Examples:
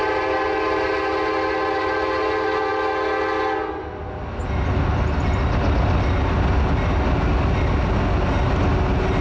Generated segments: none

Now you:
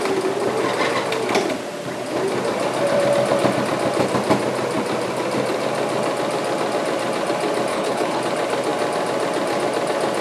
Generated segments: 7.7-8.2 (codec, HILCodec)

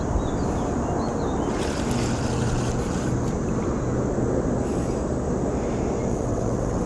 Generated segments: 6.1-6.9 (vocoder, WaveNeXt)